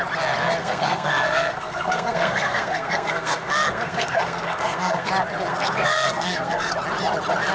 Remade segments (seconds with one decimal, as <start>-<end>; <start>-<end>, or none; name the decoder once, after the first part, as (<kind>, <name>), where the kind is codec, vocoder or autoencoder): 0.6-5.1 (codec, SNAC); 5.5-6.7

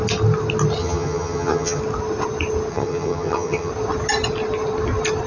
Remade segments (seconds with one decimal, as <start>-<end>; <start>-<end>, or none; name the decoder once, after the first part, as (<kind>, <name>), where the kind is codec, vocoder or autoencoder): 0.8-1.8 (vocoder, HiFi-GAN); 2.7-3.7

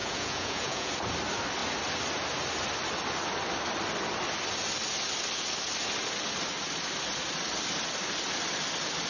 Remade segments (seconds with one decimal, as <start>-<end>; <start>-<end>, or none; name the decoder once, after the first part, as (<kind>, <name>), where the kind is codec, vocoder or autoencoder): 0.0-0.9 (vocoder, Vocos)

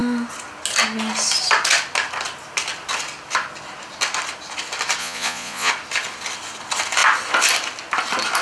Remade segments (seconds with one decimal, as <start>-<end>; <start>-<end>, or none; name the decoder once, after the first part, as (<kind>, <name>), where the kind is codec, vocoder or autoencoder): 5.0-5.7 (vocoder, Vocos)

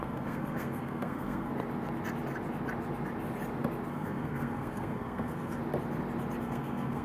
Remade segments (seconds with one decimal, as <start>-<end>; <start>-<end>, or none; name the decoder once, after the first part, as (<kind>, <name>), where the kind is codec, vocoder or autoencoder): 0.0-1.5 (codec, SNAC); 3.9-5.6; 6.4-7.0